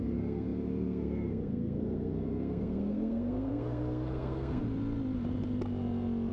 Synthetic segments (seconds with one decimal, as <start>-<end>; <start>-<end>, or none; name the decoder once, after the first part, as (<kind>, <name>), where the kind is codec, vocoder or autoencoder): 0.0-4.6 (codec, SNAC)